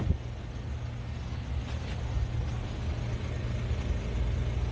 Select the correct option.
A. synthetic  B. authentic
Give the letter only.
B